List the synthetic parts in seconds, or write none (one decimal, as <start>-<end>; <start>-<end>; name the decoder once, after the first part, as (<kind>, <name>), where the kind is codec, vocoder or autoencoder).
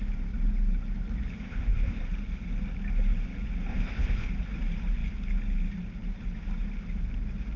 1.4-2.0 (codec, ZipCodec); 3.7-4.3